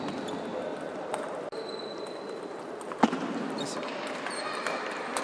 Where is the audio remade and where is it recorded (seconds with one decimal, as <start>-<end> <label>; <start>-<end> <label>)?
0.0-0.7 recorded; 0.7-2.7 remade; 2.7-5.2 recorded